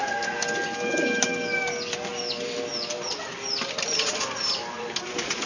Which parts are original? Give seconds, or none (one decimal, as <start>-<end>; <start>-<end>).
0.0-5.5